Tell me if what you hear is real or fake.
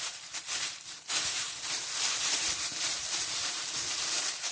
fake